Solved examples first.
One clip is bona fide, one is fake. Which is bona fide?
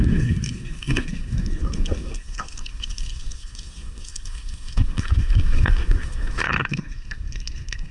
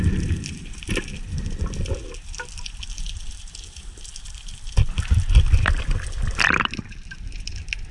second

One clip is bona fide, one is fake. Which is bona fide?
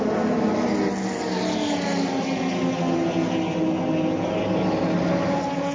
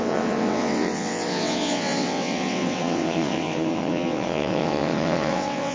first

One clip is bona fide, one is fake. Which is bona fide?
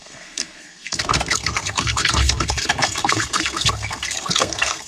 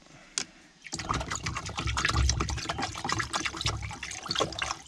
second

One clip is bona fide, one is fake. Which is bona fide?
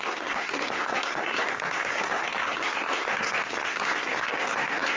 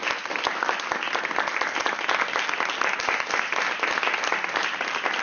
second